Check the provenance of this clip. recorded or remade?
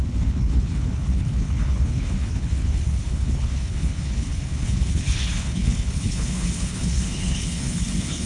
remade